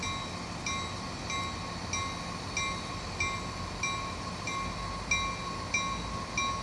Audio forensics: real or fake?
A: real